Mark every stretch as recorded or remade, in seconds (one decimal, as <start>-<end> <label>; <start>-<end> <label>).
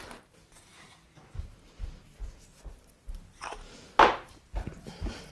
0.0-5.3 recorded